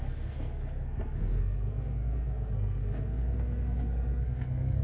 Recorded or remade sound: remade